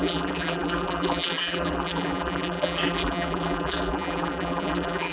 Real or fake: fake